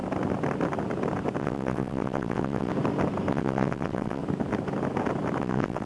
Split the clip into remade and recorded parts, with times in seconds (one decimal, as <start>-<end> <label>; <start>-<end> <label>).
0.0-1.4 recorded; 1.4-2.7 remade; 2.7-3.3 recorded; 3.3-4.2 remade; 4.2-5.4 recorded; 5.4-5.9 remade